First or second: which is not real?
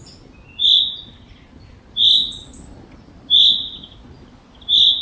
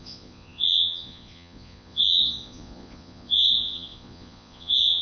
second